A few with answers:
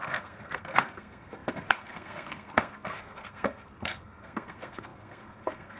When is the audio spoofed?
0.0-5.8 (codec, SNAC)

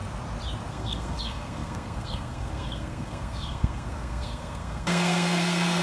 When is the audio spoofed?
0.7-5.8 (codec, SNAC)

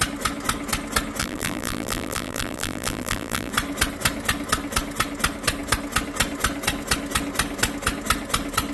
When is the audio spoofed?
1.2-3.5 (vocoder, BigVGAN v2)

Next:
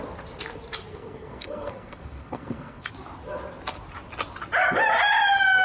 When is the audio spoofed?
0.9-2.9 (codec, SNAC)

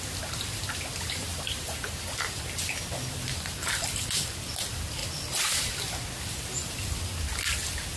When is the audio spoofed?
1.3-2.4 (vocoder, BigVGAN v2)

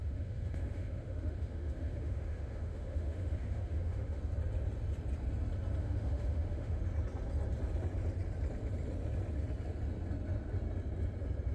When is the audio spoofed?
0.0-4.2 (autoencoder, DAC-VAE); 5.8-6.8